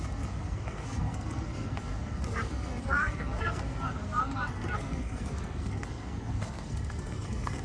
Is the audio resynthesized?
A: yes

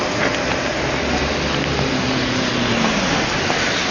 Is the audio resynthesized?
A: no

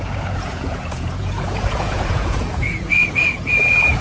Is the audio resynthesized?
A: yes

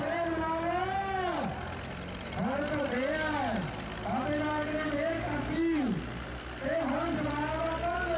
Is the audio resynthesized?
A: no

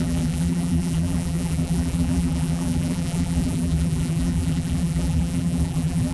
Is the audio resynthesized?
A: yes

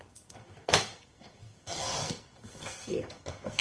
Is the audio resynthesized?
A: yes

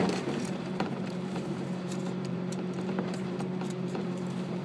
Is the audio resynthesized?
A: yes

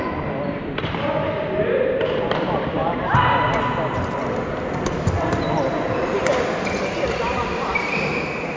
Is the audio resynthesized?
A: no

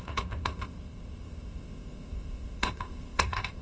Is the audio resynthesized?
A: yes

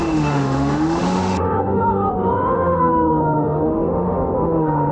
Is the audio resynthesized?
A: yes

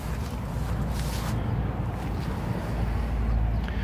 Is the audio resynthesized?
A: no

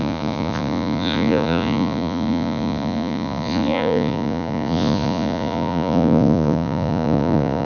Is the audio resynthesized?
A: yes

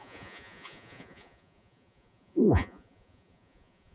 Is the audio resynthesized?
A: yes